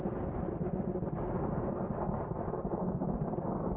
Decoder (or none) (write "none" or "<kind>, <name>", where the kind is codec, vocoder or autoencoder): none